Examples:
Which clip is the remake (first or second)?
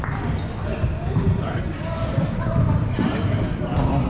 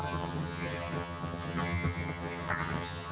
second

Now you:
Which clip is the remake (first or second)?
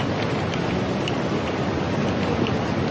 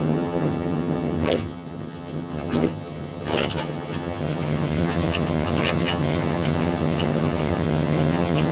second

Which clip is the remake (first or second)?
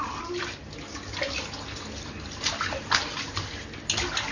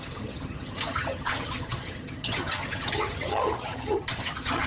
second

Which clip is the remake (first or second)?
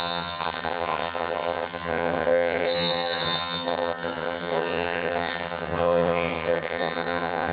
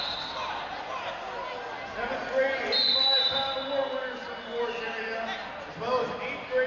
first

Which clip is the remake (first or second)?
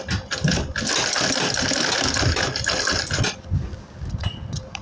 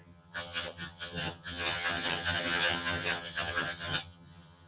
second